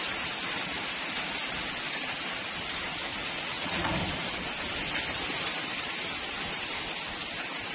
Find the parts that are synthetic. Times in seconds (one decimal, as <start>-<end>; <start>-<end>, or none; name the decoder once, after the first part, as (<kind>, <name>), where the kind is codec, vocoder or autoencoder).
3.1-3.9 (vocoder, Vocos)